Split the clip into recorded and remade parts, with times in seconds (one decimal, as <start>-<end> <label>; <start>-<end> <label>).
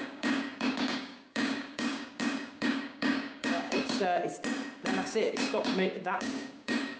0.0-4.2 remade; 4.2-4.9 recorded; 4.9-7.0 remade